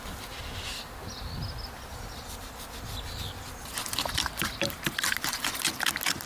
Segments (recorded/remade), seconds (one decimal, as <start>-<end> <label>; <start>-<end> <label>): 0.0-6.3 recorded